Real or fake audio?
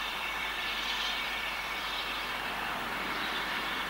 fake